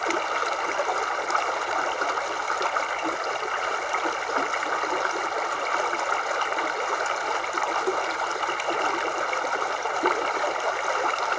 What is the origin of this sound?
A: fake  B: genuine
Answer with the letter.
B